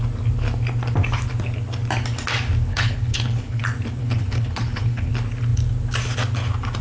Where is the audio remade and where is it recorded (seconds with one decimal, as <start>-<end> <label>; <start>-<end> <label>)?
0.0-2.7 recorded; 2.7-3.6 remade; 3.6-4.0 recorded; 4.0-5.1 remade; 5.1-6.8 recorded